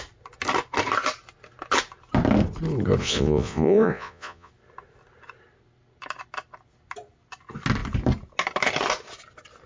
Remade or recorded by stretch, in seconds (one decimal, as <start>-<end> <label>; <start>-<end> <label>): 0.0-3.0 recorded; 3.0-4.5 remade; 4.5-9.7 recorded